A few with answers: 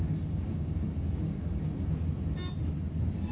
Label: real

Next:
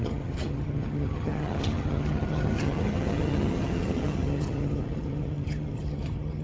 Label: fake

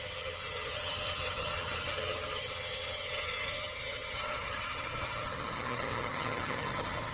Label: fake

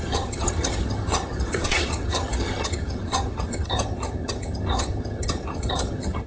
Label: fake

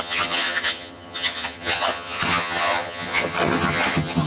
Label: fake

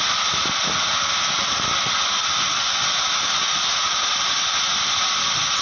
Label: real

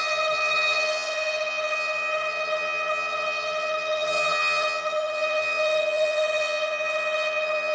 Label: fake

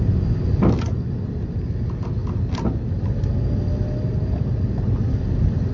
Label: real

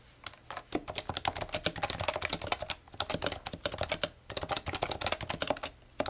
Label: real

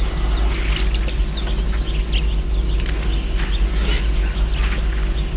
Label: real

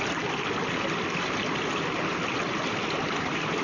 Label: real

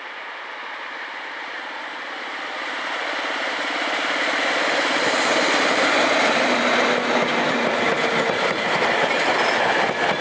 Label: real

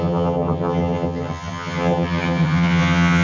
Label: fake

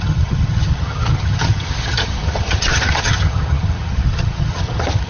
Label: fake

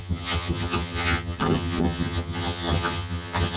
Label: fake